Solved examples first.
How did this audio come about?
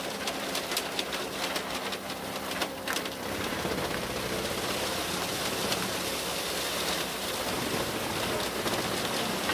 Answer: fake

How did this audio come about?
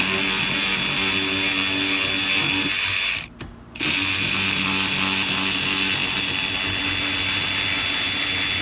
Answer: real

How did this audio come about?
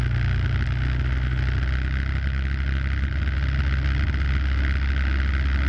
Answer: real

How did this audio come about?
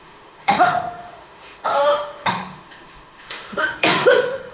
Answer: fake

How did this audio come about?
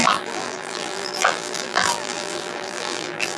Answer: fake